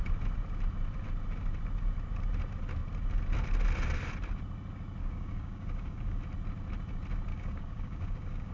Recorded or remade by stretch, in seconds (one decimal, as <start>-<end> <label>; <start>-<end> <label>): 0.0-5.0 recorded; 5.0-6.2 remade; 6.2-7.3 recorded; 7.3-8.5 remade